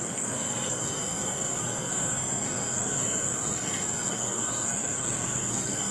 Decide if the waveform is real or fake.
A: fake